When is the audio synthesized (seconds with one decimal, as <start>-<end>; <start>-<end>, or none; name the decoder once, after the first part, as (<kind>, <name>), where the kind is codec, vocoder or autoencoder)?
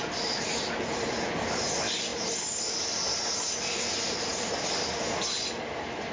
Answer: none